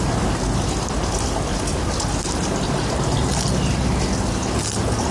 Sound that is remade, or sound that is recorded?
recorded